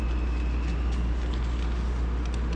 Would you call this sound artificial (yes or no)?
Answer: no